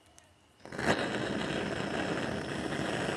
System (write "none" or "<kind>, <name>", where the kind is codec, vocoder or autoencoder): none